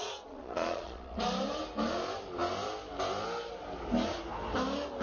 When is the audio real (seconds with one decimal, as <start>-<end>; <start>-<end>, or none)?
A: 1.2-5.0